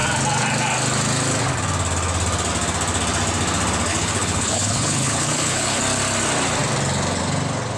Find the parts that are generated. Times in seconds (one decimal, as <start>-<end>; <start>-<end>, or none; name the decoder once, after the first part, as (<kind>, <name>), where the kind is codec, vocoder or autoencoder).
3.9-5.8 (codec, HILCodec)